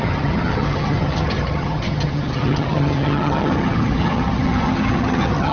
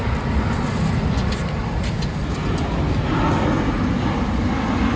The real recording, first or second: second